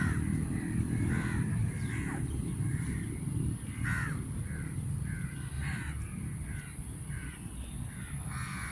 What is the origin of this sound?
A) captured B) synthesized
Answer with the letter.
B